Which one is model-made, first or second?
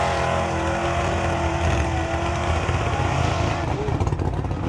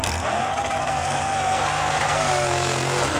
second